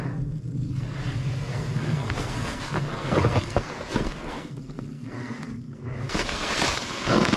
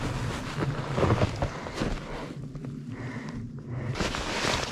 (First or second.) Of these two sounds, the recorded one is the second